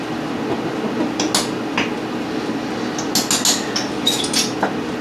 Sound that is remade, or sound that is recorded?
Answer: recorded